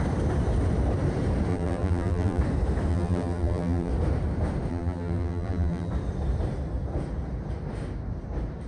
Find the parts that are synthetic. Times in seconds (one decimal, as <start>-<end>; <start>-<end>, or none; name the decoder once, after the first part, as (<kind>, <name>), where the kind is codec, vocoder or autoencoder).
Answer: 1.5-2.4 (vocoder, BigVGAN v2); 2.9-3.9; 4.7-5.9